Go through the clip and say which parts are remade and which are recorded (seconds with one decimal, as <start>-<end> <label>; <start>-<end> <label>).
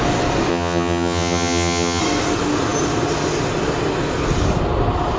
0.0-0.5 recorded; 0.5-2.0 remade; 2.0-5.2 recorded